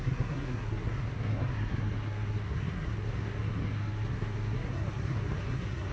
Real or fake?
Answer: fake